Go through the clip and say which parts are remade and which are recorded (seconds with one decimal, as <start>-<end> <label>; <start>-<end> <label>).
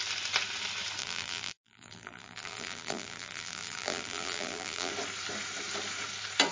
0.0-1.0 recorded; 1.0-4.9 remade; 4.9-6.5 recorded